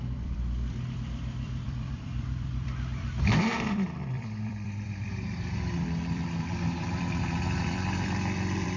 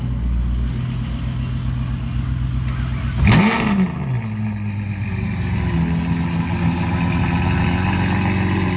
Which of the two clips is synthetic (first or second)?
first